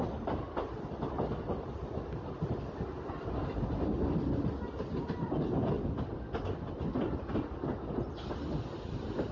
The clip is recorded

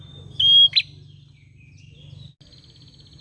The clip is recorded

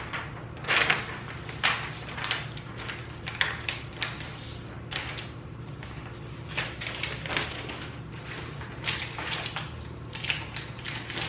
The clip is recorded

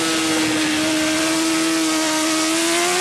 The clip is recorded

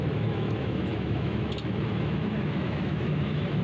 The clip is remade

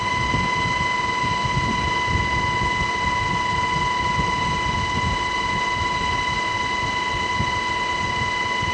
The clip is recorded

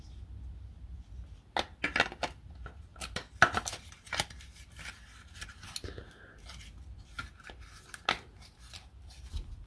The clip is recorded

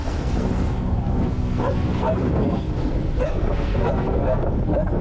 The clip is remade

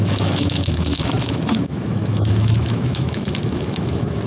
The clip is remade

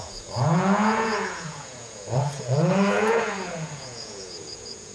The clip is remade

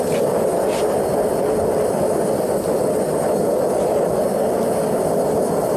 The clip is recorded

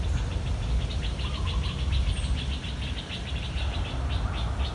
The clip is recorded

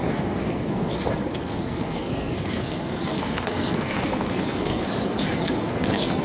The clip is remade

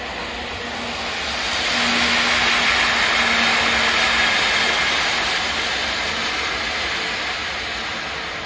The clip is recorded